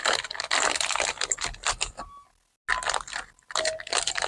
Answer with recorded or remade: recorded